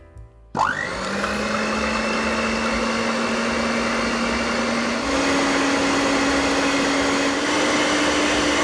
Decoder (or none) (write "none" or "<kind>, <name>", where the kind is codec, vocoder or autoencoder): none